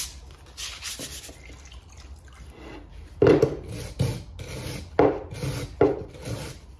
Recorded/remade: recorded